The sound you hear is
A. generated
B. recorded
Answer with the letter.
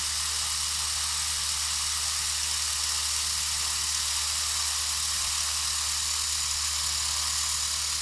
B